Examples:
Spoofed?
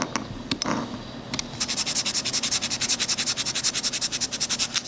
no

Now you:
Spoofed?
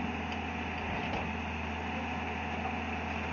no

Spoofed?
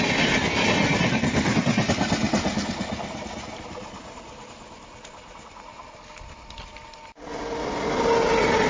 no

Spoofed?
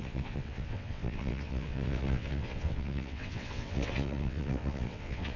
yes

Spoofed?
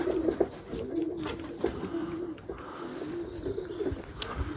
no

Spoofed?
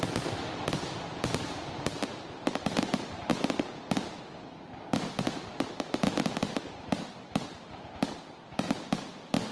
no